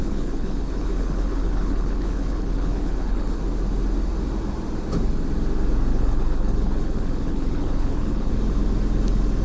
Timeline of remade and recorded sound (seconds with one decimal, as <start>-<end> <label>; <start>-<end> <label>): 0.0-3.4 remade; 3.4-5.9 recorded; 5.9-8.3 remade; 8.3-9.4 recorded